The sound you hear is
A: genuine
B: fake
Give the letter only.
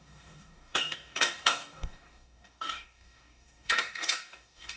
B